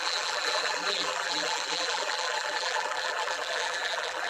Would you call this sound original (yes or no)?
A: no